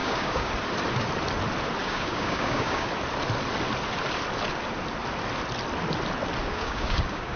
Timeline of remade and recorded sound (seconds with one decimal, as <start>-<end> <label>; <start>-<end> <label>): 0.0-0.5 remade; 0.5-1.8 recorded; 1.8-2.9 remade; 2.9-6.4 recorded; 6.4-7.4 remade